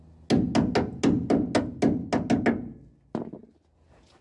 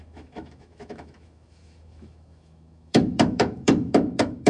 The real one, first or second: first